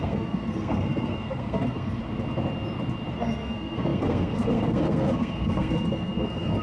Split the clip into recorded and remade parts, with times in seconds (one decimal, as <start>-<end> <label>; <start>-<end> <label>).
0.0-2.0 remade; 2.0-3.1 recorded; 3.1-6.6 remade